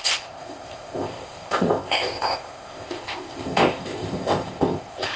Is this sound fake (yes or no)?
yes